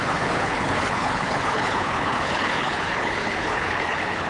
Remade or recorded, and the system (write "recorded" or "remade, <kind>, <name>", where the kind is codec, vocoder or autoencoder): remade, codec, HILCodec